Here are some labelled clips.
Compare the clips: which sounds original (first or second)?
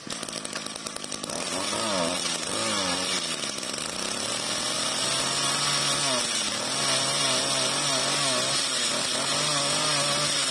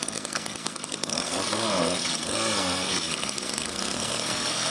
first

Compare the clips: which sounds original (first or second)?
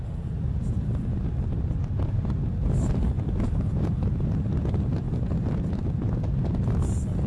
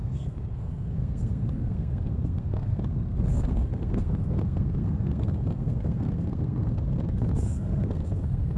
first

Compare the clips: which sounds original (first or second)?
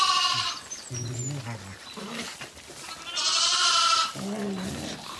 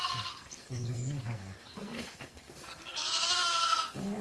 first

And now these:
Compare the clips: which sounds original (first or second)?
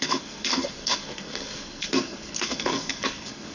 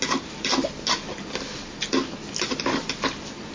second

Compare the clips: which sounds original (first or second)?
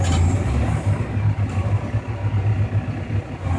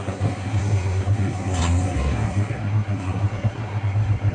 first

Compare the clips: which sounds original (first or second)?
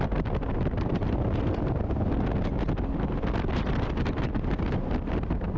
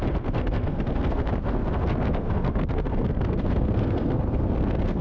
first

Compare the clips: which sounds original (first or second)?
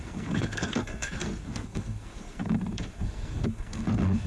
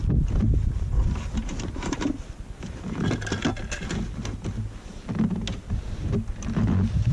second